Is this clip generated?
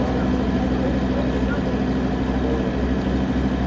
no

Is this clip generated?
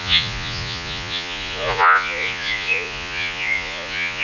yes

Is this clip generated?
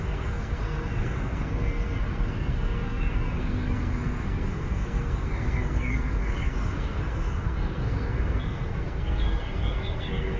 yes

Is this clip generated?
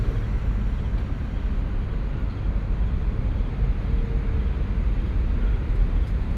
no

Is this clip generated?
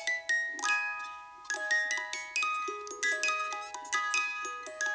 no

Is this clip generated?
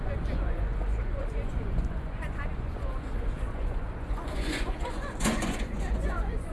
yes